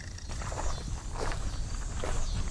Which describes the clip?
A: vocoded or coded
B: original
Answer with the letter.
B